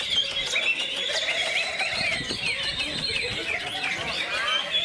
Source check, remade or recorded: recorded